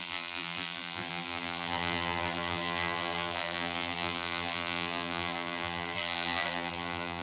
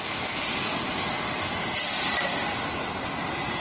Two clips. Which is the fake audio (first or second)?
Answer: first